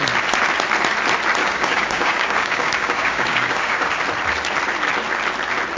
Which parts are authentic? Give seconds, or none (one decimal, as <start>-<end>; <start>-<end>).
0.0-1.4; 4.0-5.8